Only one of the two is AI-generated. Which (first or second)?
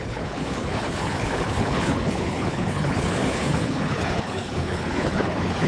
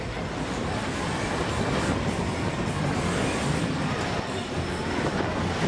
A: first